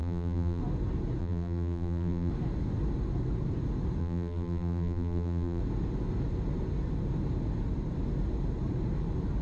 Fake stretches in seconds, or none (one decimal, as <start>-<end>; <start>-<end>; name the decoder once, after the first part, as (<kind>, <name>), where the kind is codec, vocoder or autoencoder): 0.0-0.6 (vocoder, BigVGAN v2); 1.2-2.3; 4.0-5.6